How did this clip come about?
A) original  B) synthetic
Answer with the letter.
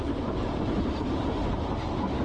B